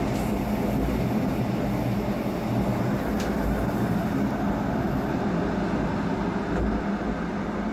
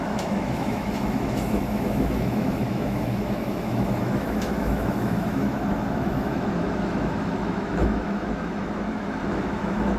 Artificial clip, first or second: second